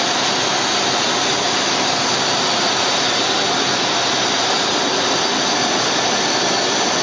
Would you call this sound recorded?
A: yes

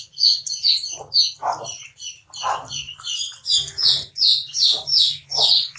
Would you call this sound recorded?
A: yes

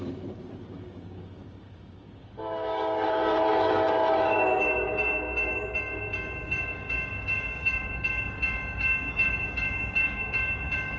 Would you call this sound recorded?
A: no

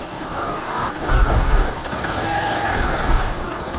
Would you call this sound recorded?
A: no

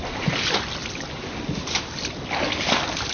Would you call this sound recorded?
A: yes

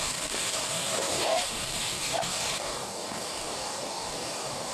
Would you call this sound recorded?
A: no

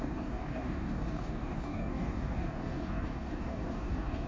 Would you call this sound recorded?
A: no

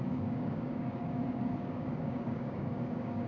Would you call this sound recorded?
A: no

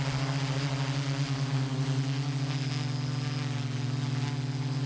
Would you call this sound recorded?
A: yes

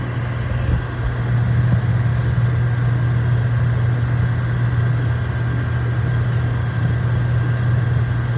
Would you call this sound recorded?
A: yes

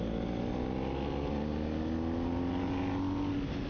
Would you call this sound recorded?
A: yes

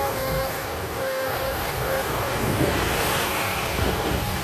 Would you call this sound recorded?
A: no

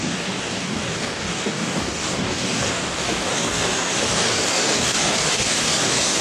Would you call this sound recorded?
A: no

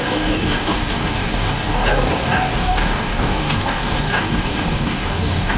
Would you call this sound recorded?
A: no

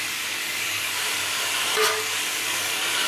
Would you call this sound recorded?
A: no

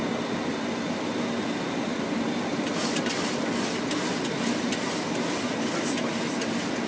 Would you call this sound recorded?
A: yes